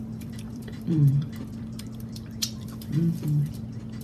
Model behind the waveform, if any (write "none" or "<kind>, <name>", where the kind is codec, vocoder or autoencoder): vocoder, BigVGAN v2